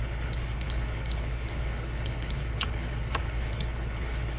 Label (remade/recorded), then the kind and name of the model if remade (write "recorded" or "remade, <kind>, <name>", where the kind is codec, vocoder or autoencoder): remade, codec, HILCodec